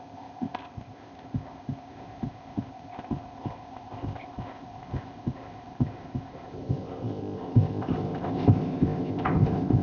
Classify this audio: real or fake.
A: fake